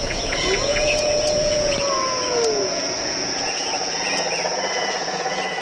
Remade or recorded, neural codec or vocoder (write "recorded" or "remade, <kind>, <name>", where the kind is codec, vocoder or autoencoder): remade, vocoder, Vocos